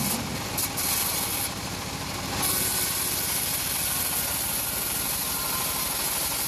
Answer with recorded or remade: recorded